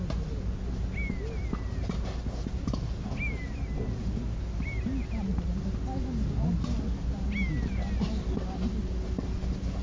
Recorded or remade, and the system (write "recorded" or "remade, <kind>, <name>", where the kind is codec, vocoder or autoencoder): recorded